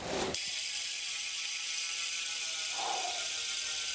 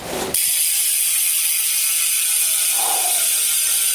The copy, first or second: first